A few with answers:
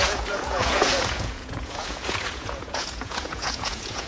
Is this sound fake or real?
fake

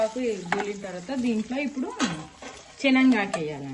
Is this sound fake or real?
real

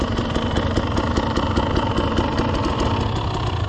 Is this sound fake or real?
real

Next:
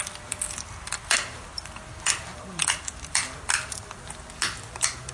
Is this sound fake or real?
real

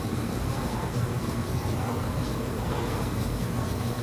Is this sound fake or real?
fake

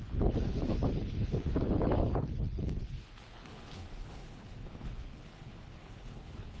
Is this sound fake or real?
fake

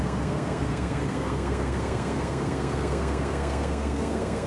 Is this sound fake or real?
fake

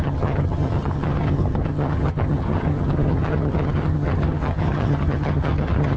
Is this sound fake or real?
fake